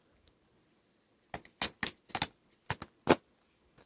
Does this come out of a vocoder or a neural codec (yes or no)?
no